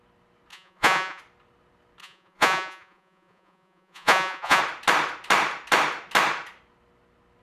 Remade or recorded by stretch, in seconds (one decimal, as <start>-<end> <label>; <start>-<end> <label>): 0.0-0.5 recorded; 0.5-1.2 remade; 1.2-2.0 recorded; 2.0-4.6 remade; 4.6-7.4 recorded